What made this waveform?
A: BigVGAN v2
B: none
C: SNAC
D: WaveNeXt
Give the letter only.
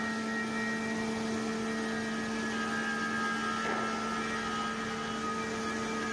B